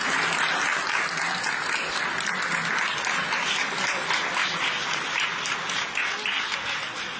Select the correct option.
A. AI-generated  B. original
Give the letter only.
B